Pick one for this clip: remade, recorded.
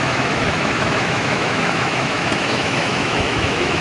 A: remade